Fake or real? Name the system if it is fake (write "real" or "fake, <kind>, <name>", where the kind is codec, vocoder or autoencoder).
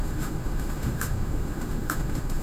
fake, autoencoder, DAC-VAE